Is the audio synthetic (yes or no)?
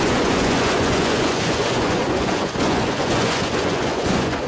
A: yes